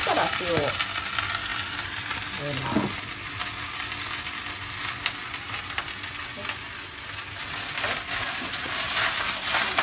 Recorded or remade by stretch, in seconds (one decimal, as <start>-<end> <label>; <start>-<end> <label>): 0.0-0.7 remade; 0.7-8.2 recorded; 8.2-9.1 remade; 9.1-9.8 recorded